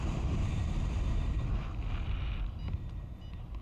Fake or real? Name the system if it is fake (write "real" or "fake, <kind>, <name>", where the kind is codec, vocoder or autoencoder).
real